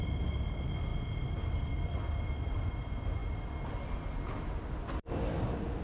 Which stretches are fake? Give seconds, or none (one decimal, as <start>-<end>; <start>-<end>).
none